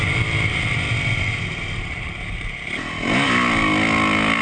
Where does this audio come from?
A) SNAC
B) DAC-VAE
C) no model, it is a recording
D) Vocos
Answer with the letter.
C